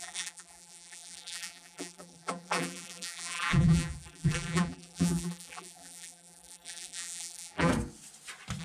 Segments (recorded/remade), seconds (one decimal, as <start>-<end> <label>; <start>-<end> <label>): 0.0-7.7 remade; 7.7-8.6 recorded